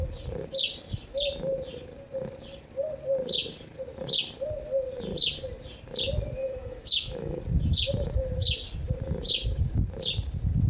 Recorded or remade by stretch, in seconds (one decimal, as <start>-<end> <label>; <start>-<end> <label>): 0.0-6.4 recorded; 6.4-7.4 remade; 7.4-10.7 recorded